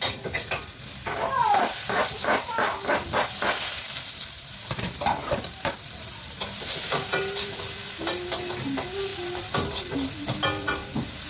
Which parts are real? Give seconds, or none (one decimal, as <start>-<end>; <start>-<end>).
0.0-1.4; 2.1-3.8; 7.5-11.3